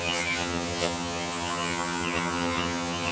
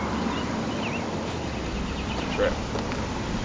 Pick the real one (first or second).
second